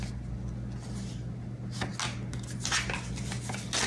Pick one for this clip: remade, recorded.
recorded